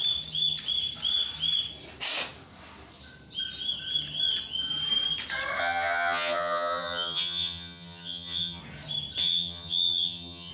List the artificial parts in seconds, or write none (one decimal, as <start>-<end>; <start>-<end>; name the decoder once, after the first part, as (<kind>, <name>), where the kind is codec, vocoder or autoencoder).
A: 5.6-8.6 (vocoder, HiFi-GAN); 9.2-10.5